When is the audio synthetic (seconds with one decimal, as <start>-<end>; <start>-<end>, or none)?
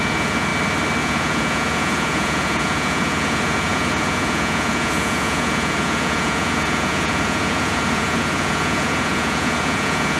0.0-0.5; 1.0-10.2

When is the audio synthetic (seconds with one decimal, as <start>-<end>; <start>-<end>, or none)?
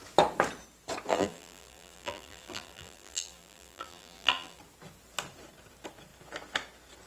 1.1-4.6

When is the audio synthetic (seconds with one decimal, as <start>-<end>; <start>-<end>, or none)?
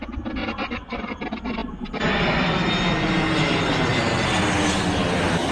0.4-1.1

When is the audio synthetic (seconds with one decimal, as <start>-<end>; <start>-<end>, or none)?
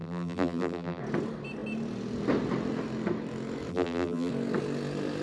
0.0-1.0; 3.7-4.3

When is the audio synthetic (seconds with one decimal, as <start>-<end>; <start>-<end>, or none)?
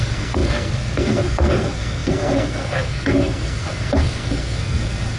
0.0-5.2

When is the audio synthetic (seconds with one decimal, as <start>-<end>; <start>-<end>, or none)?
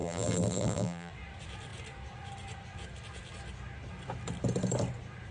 0.0-1.1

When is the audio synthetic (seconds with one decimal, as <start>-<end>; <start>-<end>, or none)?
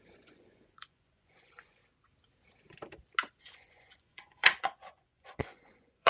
0.0-1.8; 3.4-6.1